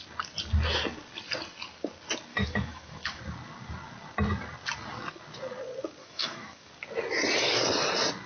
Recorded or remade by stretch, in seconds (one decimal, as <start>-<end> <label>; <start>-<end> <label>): 0.0-2.3 recorded; 2.3-3.2 remade; 3.2-6.0 recorded; 6.0-6.7 remade; 6.7-8.3 recorded